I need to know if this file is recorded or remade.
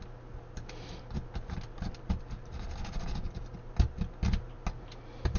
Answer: recorded